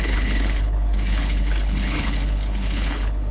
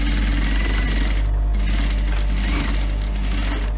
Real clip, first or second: second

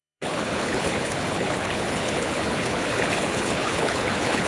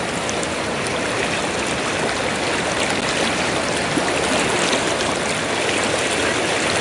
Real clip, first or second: second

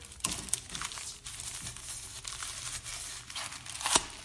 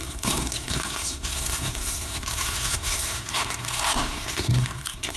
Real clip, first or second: first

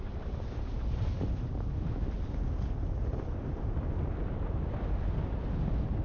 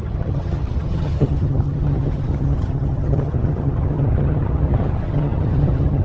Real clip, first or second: first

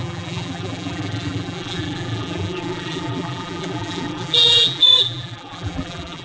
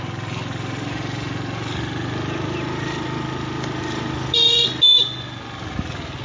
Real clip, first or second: second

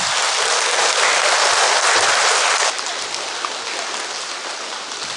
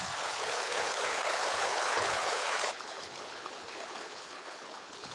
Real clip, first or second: first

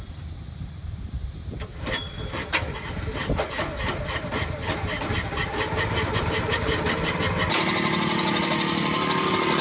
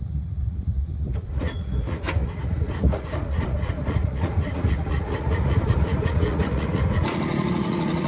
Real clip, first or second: first